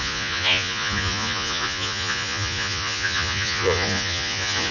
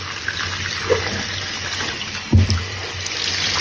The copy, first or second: first